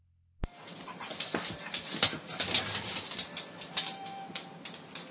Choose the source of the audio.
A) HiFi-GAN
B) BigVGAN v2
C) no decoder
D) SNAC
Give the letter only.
C